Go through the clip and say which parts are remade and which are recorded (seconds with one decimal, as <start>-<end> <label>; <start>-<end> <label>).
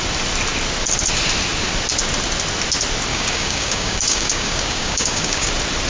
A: 0.0-3.1 recorded; 3.1-5.5 remade; 5.5-5.9 recorded